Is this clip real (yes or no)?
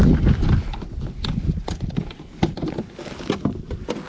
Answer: yes